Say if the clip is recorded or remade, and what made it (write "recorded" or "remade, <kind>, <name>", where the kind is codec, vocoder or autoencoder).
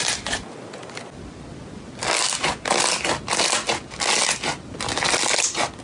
recorded